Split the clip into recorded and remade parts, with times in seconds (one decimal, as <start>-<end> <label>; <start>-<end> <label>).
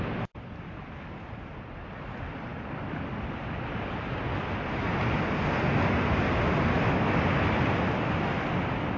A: 0.0-9.0 recorded